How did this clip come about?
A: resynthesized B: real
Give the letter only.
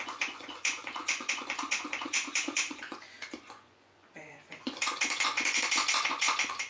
A